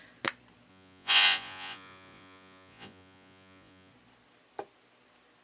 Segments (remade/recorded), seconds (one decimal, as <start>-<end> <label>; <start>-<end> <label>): 0.0-0.7 recorded; 0.7-3.9 remade; 3.9-5.4 recorded